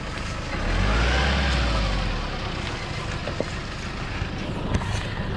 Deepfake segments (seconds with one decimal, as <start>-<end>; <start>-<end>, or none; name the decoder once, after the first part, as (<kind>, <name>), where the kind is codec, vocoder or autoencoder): none